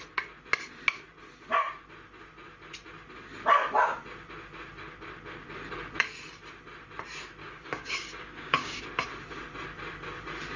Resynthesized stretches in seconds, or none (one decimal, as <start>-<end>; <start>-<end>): 7.4-8.8